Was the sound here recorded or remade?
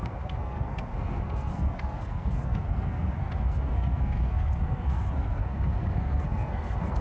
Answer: remade